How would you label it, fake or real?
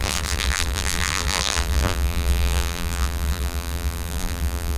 fake